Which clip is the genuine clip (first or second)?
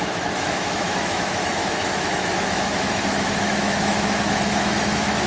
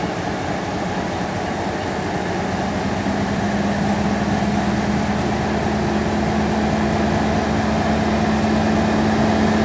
second